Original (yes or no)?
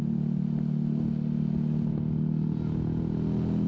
yes